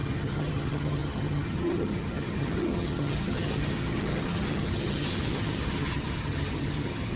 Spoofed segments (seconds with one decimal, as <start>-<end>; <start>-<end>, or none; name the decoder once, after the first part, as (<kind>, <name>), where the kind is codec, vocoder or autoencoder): 0.0-7.2 (vocoder, HiFi-GAN)

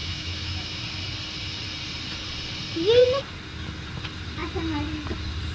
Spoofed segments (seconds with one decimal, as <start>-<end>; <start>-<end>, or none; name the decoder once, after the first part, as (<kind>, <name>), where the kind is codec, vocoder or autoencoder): 0.0-0.8 (autoencoder, DAC-VAE)

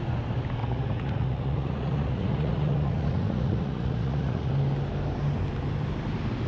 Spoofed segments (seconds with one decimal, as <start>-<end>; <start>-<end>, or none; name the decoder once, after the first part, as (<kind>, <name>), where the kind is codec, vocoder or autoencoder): 0.6-4.5 (vocoder, Vocos)

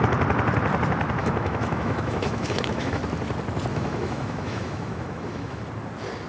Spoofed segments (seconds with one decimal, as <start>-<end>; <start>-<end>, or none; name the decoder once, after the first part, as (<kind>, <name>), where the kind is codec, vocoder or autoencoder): 1.2-3.0 (autoencoder, DAC-VAE); 3.7-5.6